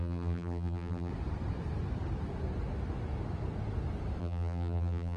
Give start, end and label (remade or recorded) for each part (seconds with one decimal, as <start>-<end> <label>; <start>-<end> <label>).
0.0-1.1 remade; 1.1-4.2 recorded; 4.2-5.2 remade